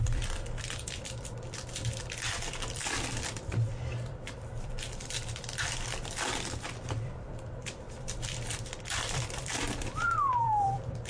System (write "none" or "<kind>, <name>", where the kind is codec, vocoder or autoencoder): vocoder, BigVGAN v2